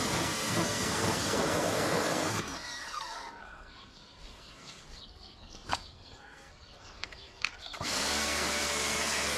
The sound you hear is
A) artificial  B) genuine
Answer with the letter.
A